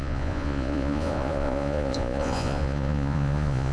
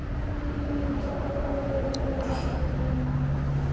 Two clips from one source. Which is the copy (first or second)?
first